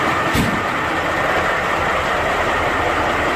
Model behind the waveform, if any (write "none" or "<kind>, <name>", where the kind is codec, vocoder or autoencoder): none